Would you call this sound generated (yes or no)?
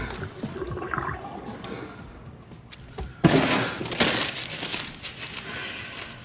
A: no